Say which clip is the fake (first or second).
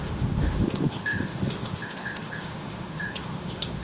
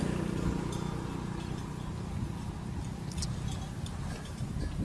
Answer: first